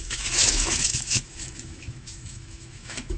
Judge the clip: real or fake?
fake